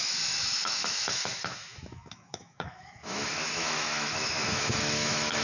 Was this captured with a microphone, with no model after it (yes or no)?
no